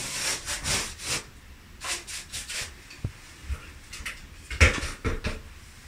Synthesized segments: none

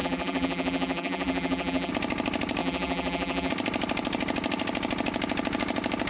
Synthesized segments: 0.0-1.9 (vocoder, BigVGAN v2); 2.6-3.5

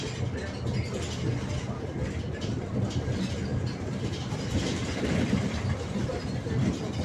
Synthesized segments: 3.5-6.5 (vocoder, BigVGAN v2)

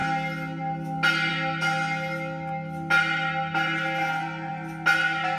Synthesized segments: none